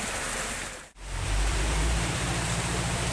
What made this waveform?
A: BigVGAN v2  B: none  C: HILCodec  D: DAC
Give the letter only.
A